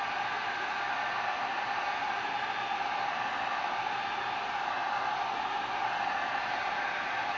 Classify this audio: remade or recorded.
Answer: recorded